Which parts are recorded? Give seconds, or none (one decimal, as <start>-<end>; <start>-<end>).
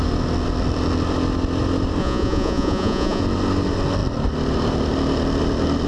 0.0-2.0; 3.2-5.9